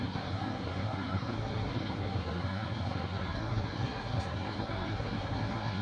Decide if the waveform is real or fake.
fake